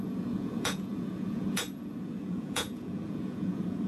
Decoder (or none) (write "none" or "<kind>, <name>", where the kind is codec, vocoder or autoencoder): vocoder, Vocos